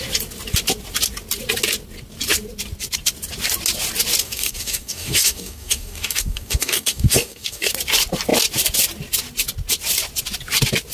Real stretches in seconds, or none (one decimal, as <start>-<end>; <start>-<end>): 0.0-4.2; 7.7-10.9

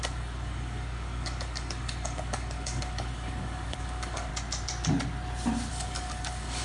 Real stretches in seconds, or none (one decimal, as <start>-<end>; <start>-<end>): 4.3-5.7